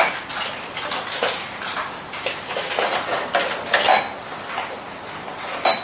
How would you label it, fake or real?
real